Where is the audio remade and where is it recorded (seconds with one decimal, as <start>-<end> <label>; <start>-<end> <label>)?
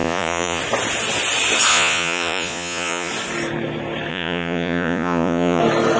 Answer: 0.0-0.6 remade; 0.6-1.7 recorded; 1.7-3.1 remade; 3.1-4.1 recorded; 4.1-5.6 remade; 5.6-6.0 recorded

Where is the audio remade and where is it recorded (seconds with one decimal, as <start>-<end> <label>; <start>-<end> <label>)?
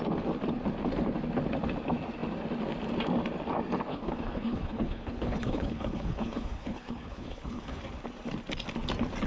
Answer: 0.0-3.9 recorded; 3.9-7.8 remade; 7.8-9.3 recorded